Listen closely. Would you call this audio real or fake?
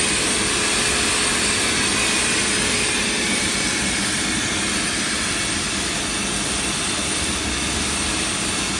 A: real